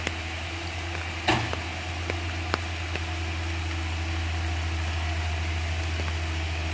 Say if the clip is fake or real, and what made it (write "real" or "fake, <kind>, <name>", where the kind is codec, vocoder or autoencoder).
real